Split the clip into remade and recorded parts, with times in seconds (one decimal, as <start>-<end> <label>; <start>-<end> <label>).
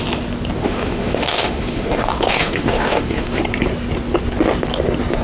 0.0-0.6 recorded; 0.6-3.4 remade; 3.4-5.2 recorded